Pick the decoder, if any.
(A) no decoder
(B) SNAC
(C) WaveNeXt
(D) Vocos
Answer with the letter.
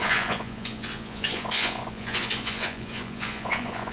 D